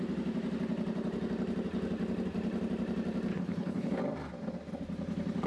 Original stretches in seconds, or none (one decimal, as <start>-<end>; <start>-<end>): 0.0-3.3; 4.0-5.5